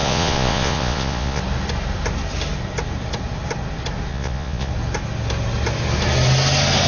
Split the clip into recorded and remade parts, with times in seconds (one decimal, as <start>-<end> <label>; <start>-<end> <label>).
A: 0.0-1.4 remade; 1.4-4.1 recorded; 4.1-4.7 remade; 4.7-6.9 recorded